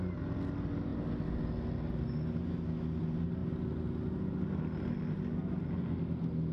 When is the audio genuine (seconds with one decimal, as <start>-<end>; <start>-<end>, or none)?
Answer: 0.0-6.5